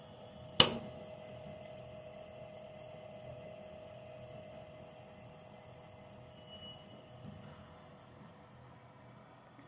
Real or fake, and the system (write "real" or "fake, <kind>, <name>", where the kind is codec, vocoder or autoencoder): real